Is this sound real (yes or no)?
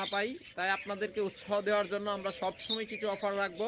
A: yes